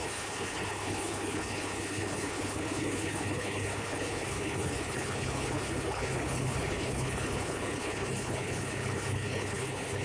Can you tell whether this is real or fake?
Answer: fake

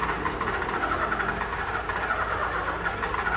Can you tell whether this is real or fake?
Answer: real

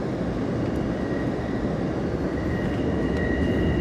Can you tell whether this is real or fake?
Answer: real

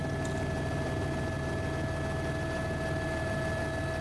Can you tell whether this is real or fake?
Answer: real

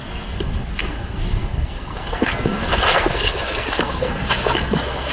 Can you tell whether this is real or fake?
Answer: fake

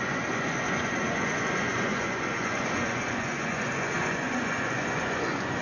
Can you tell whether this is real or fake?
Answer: fake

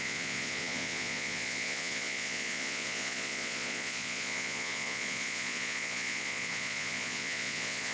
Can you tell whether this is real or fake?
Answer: fake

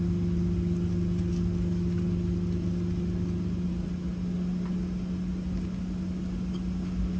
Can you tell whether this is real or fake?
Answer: real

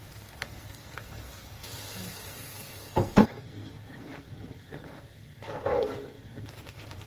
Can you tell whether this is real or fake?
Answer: fake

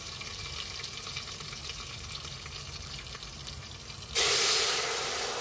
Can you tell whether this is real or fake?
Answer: real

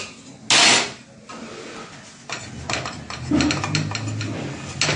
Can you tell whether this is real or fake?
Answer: real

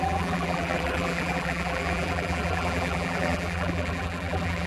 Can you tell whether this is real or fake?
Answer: fake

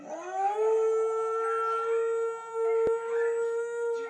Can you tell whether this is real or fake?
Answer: real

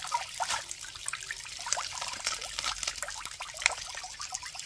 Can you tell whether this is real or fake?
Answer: fake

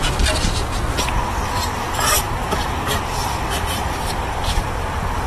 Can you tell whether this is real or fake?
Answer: fake